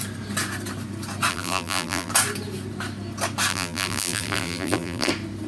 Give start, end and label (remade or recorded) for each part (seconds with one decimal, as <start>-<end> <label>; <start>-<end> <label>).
0.0-1.3 recorded; 1.3-2.1 remade; 2.1-3.5 recorded; 3.5-5.1 remade; 5.1-5.5 recorded